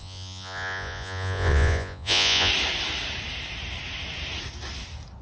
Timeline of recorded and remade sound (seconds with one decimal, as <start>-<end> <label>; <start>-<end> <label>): 0.0-2.5 remade; 2.5-5.2 recorded